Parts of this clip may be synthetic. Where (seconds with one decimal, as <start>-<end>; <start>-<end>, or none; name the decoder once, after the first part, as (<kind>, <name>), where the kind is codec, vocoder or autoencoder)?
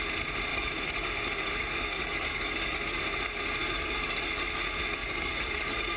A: 0.5-3.0 (codec, DAC); 3.6-4.2; 5.0-6.0